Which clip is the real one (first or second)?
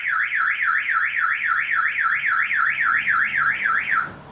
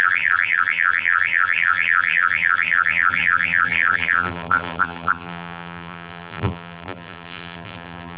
first